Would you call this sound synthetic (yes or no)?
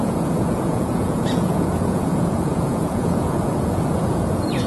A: yes